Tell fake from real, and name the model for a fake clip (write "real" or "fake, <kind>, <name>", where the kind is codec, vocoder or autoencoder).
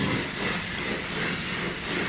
real